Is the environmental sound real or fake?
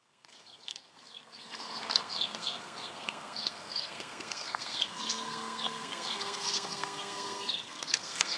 fake